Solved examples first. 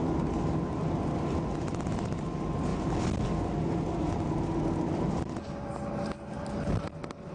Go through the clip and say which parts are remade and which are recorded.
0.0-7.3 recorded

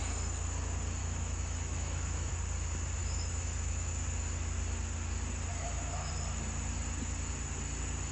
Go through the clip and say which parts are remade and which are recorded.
0.0-1.0 recorded; 1.0-2.3 remade; 2.3-3.0 recorded; 3.0-3.9 remade; 3.9-5.5 recorded; 5.5-6.1 remade; 6.1-8.1 recorded